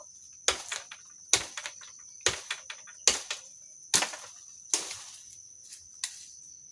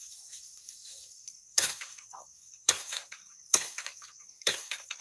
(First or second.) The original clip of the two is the first